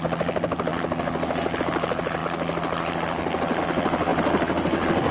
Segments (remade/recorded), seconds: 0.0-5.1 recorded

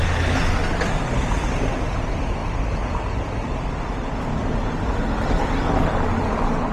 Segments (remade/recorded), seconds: 0.0-6.7 recorded

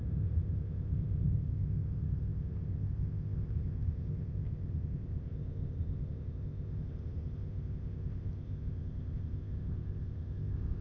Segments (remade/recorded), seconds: 0.0-10.8 remade

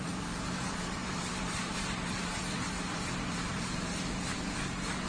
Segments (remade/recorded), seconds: 0.0-5.1 remade